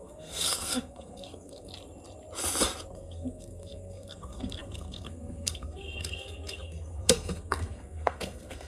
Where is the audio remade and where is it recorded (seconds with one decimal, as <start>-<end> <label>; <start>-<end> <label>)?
0.0-1.7 remade; 1.7-2.9 recorded; 2.9-8.7 remade